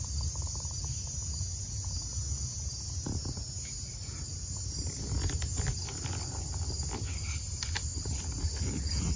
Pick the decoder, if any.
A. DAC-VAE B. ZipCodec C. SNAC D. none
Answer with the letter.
D